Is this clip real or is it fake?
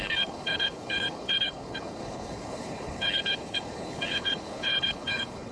fake